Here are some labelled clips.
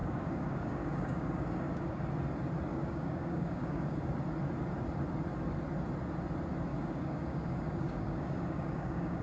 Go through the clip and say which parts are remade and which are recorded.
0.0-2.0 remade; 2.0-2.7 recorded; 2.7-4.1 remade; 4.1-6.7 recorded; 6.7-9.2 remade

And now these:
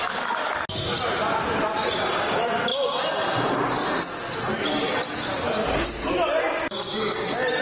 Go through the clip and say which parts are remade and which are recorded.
0.0-7.6 recorded

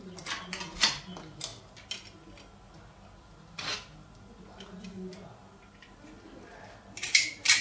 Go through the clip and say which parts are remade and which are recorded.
0.0-7.6 recorded

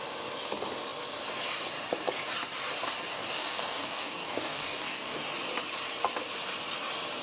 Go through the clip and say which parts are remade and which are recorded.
0.0-3.1 recorded; 3.1-5.3 remade; 5.3-7.2 recorded